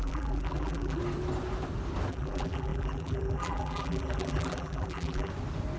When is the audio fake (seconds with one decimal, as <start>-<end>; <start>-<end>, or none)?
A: 0.0-1.0; 2.1-5.3